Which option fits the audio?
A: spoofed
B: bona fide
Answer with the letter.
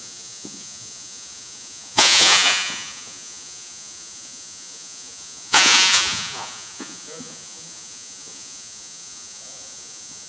A